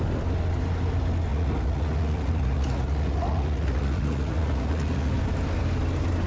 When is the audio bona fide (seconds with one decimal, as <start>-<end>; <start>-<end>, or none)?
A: 0.0-1.3; 5.1-6.3